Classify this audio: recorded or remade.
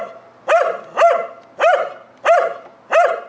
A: recorded